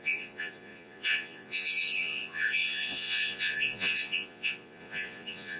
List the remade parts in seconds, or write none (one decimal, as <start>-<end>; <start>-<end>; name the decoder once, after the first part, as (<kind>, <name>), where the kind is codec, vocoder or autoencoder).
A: 0.0-5.6 (vocoder, Vocos)